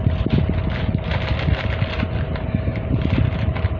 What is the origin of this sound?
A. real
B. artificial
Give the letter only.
A